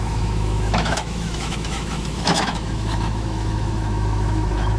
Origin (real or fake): fake